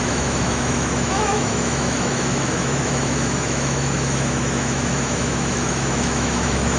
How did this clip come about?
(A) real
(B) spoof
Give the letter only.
B